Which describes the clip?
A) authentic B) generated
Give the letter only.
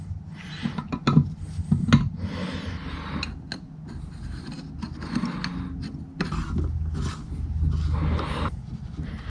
A